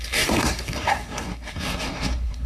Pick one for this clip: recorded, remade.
remade